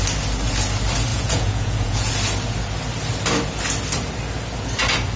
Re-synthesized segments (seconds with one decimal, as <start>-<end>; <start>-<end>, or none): 1.1-2.1